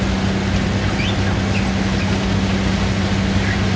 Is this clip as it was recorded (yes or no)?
yes